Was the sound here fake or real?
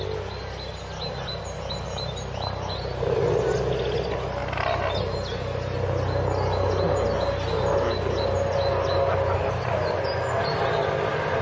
real